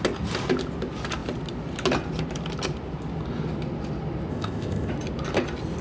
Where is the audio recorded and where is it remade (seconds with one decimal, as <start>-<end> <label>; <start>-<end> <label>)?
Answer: 0.0-4.3 recorded; 4.3-4.9 remade; 4.9-5.8 recorded